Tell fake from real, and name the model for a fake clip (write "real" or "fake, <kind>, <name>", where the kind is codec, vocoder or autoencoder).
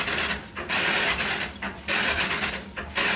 real